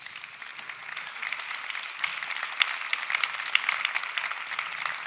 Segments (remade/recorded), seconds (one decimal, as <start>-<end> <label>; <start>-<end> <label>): 0.0-5.1 recorded